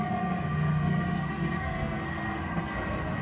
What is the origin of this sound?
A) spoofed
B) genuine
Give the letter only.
A